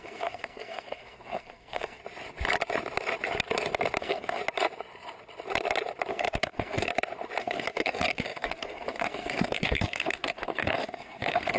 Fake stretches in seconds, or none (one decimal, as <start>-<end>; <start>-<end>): 0.0-2.0; 4.0-4.4; 6.1-6.9; 7.4-11.6